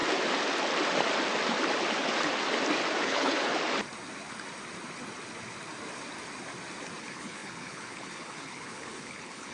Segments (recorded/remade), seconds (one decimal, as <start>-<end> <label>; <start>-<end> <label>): 0.0-3.0 recorded; 3.0-3.5 remade; 3.5-7.0 recorded; 7.0-9.5 remade